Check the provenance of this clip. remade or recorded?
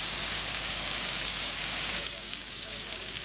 remade